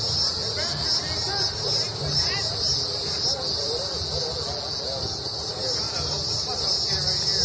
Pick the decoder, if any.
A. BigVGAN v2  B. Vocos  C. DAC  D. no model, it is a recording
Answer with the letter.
D